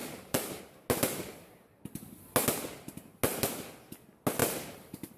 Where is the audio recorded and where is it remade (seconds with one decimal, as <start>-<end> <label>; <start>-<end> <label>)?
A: 0.0-0.6 remade; 0.6-4.4 recorded; 4.4-5.2 remade